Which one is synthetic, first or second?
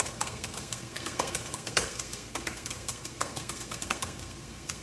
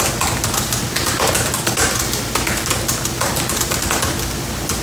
first